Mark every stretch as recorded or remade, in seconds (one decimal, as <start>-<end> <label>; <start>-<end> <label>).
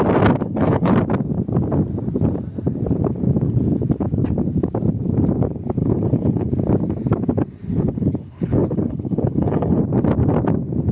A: 0.0-0.4 recorded; 0.4-0.9 remade; 0.9-5.8 recorded; 5.8-6.5 remade; 6.5-7.7 recorded; 7.7-9.8 remade; 9.8-10.9 recorded